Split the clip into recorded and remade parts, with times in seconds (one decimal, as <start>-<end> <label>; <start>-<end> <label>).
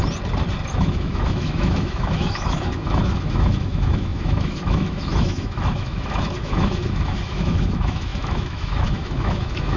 0.0-0.8 recorded; 0.8-9.8 remade